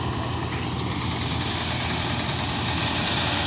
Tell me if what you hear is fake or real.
real